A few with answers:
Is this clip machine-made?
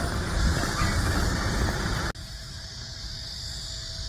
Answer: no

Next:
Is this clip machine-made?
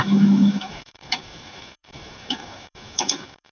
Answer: yes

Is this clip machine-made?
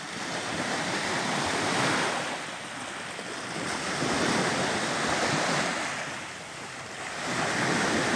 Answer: no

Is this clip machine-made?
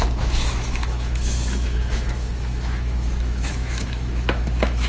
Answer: yes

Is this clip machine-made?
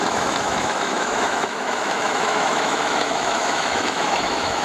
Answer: yes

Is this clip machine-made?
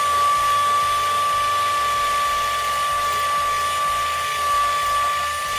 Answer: no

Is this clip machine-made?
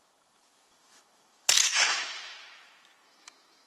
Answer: yes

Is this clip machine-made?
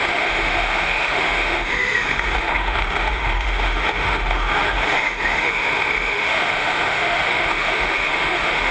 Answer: yes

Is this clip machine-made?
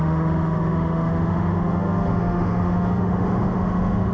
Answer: yes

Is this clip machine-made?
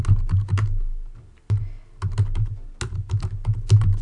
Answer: no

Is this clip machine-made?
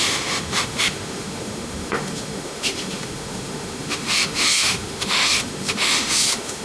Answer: yes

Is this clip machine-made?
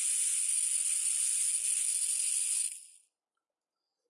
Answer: no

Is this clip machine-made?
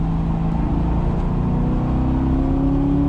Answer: no